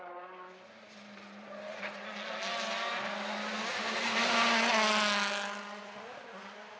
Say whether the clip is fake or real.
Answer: real